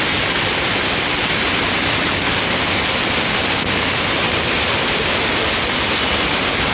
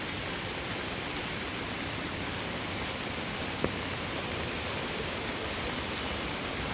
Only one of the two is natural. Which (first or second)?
first